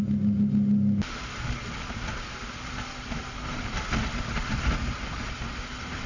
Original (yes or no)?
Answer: yes